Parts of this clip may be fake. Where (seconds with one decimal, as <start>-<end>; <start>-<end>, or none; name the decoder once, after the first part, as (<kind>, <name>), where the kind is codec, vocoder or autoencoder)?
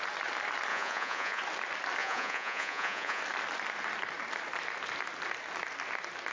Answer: 0.7-1.4 (vocoder, Vocos); 2.0-3.2